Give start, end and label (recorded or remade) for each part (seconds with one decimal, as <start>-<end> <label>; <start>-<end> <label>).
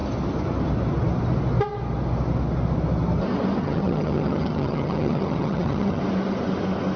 0.0-3.6 recorded; 3.6-6.0 remade; 6.0-7.0 recorded